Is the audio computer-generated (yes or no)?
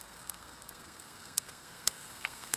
yes